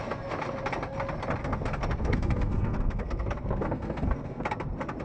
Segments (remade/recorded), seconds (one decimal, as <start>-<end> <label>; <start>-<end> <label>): 0.0-1.4 recorded; 1.4-4.4 remade; 4.4-5.0 recorded